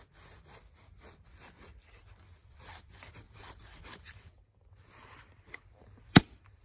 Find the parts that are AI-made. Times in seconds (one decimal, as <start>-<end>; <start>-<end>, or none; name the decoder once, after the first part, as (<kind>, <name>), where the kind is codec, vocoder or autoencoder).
2.4-6.6 (vocoder, BigVGAN v2)